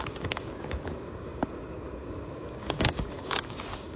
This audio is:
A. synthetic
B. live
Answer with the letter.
A